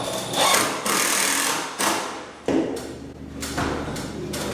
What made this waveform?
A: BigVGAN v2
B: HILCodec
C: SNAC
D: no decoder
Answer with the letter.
A